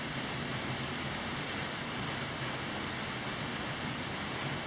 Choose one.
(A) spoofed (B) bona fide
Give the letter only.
B